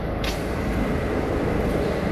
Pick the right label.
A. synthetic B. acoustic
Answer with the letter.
B